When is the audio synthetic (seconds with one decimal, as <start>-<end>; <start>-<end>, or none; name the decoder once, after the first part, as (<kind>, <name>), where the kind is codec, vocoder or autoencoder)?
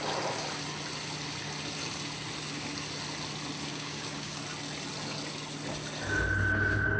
3.7-4.4 (codec, DAC)